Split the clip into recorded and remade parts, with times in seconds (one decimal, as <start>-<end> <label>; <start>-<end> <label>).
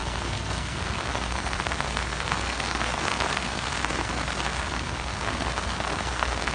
0.0-6.5 remade